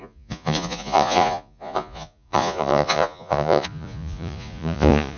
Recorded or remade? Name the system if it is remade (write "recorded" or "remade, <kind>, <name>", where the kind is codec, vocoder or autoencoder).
remade, vocoder, Vocos